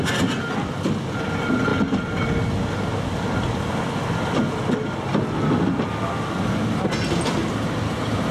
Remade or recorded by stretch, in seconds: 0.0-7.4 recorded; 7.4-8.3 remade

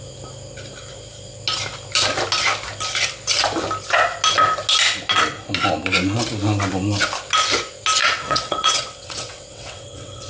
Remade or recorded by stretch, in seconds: 0.0-8.0 recorded; 8.0-10.3 remade

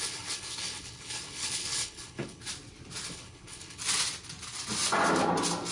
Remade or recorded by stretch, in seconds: 0.0-2.4 remade; 2.4-3.1 recorded; 3.1-3.8 remade; 3.8-5.7 recorded

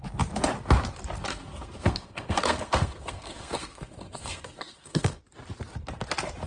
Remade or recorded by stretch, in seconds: 0.0-1.3 recorded; 1.3-5.2 remade; 5.2-6.5 recorded